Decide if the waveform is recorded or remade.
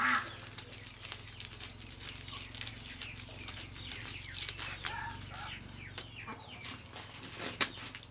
recorded